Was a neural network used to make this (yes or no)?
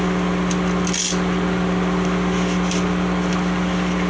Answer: no